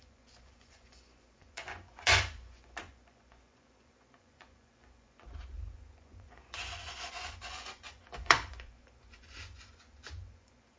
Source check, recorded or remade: remade